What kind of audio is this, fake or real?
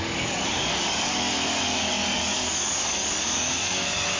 fake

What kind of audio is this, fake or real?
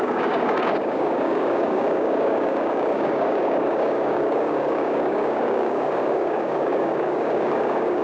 fake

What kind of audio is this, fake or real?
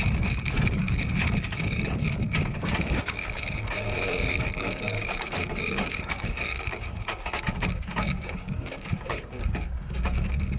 fake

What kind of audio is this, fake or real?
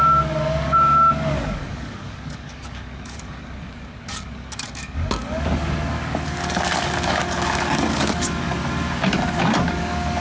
fake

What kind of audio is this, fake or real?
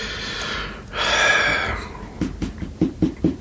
real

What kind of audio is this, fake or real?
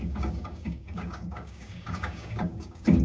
fake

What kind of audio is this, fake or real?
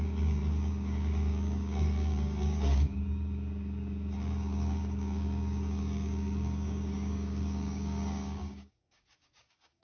fake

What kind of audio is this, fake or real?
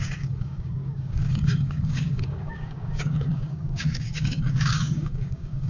fake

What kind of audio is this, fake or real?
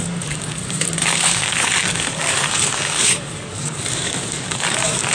fake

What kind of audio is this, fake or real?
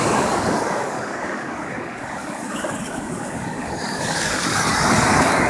fake